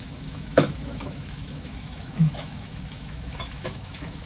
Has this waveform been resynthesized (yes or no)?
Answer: yes